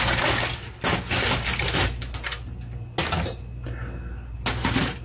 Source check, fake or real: real